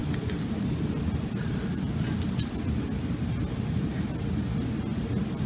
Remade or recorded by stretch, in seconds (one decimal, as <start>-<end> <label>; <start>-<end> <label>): 0.0-5.5 recorded